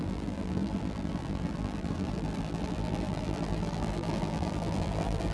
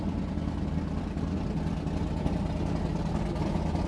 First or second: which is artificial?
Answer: first